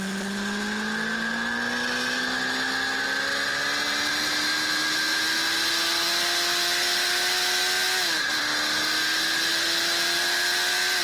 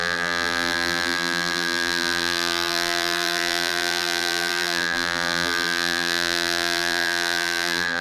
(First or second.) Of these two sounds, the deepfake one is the second